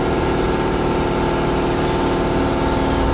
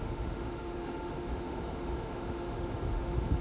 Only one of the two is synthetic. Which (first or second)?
second